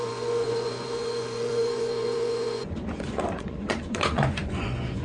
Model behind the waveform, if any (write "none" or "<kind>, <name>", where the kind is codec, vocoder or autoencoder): vocoder, Vocos